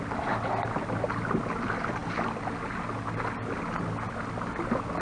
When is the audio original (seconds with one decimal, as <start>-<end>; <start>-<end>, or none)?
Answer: 0.0-5.0